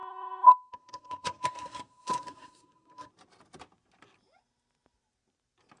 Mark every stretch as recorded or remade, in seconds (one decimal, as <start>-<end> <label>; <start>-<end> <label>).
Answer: 0.0-3.1 remade; 3.1-5.8 recorded